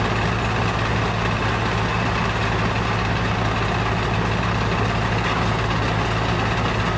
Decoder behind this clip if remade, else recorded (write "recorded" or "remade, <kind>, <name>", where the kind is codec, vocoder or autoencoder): recorded